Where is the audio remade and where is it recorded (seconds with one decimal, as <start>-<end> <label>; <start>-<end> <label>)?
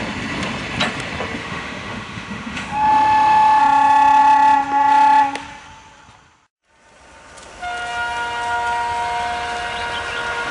0.0-1.4 recorded; 1.4-3.6 remade; 3.6-10.5 recorded